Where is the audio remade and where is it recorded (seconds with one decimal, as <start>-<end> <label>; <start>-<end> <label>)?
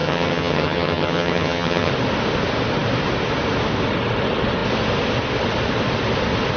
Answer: 0.0-1.9 remade; 1.9-6.6 recorded